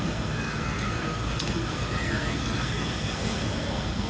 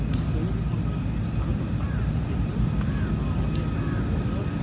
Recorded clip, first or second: second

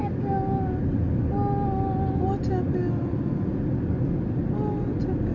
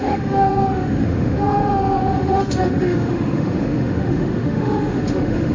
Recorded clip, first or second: first